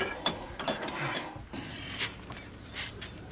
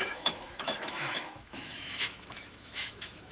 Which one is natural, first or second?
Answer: first